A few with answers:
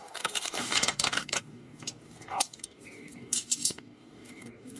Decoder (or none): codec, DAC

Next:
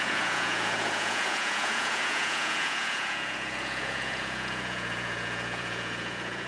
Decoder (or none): vocoder, Vocos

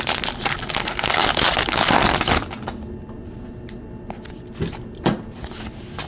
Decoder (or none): none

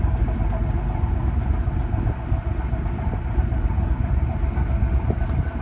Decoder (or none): none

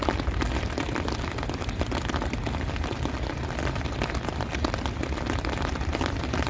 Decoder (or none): none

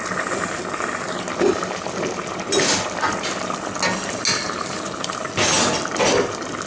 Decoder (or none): none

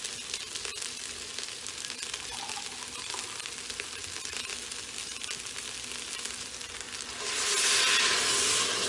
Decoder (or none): none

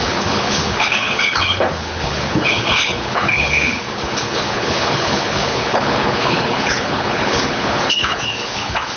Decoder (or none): codec, HILCodec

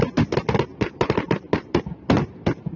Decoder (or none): none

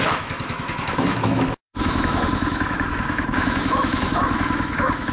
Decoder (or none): autoencoder, DAC-VAE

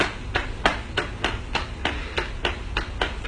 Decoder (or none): none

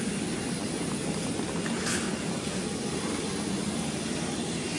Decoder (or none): none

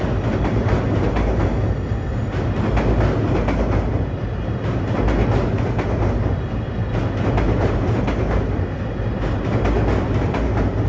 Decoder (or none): none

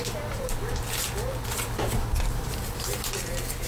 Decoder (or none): none